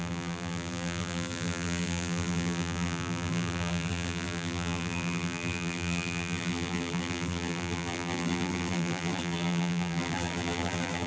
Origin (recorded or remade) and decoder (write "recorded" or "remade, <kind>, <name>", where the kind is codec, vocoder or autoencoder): remade, vocoder, BigVGAN v2